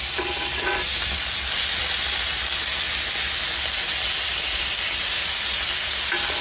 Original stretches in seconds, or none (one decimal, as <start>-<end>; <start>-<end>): 0.0-6.4